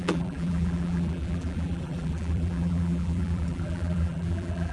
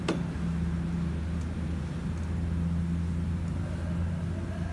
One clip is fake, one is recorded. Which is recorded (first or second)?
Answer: second